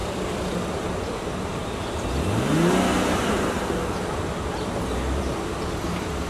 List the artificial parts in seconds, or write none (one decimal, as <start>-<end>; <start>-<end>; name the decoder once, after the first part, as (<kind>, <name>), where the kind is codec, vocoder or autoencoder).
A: 0.0-1.6 (vocoder, BigVGAN v2); 5.2-6.3